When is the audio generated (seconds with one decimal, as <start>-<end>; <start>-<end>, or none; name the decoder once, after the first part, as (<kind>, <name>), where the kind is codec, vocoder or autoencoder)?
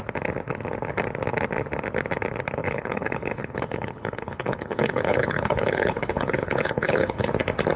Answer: 2.6-7.3 (codec, HILCodec)